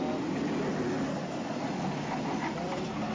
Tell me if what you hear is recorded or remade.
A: recorded